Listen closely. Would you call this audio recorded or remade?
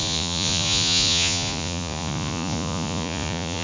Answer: remade